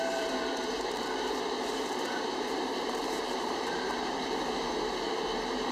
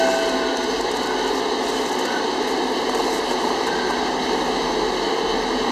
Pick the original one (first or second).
second